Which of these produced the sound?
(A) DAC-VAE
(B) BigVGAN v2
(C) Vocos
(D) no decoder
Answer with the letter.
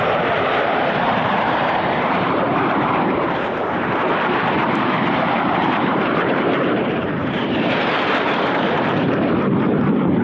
B